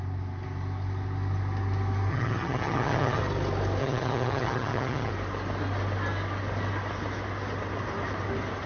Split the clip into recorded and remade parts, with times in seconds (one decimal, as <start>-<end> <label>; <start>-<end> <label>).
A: 0.0-2.1 recorded; 2.1-3.2 remade; 3.2-3.8 recorded; 3.8-5.1 remade; 5.1-8.7 recorded